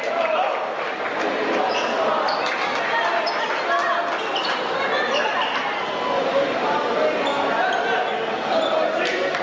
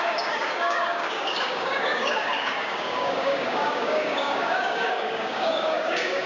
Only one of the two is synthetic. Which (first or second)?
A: second